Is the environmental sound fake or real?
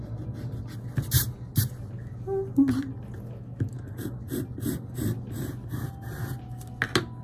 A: real